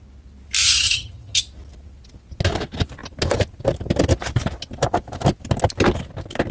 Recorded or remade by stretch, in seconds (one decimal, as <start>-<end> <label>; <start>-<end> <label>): 0.0-0.6 recorded; 0.6-1.4 remade; 1.4-6.5 recorded